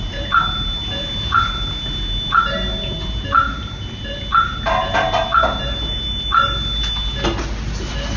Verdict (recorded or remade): recorded